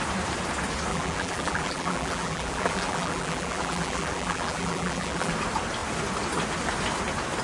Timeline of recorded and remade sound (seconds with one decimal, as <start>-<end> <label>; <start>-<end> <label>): 0.0-0.9 recorded; 0.9-5.3 remade; 5.3-7.4 recorded